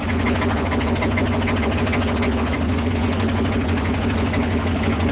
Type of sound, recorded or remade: remade